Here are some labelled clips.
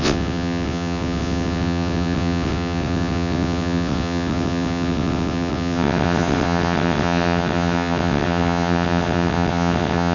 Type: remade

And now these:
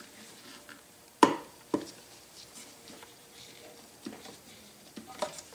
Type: remade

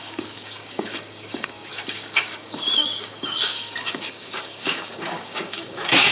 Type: remade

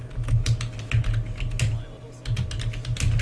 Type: recorded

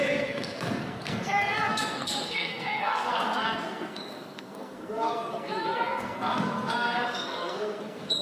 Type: remade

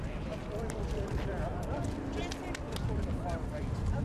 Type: recorded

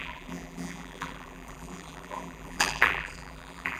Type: remade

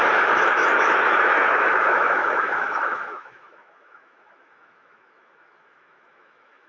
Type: remade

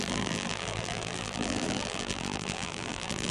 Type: remade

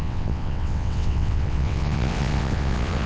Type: remade